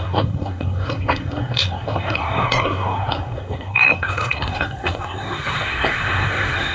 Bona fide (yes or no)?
no